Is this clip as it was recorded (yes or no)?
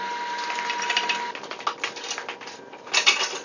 yes